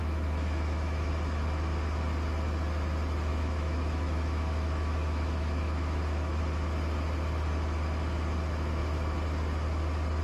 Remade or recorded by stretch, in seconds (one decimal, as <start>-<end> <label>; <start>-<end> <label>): 0.0-1.1 remade; 1.1-3.3 recorded; 3.3-6.4 remade; 6.4-10.2 recorded